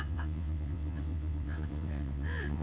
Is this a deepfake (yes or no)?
yes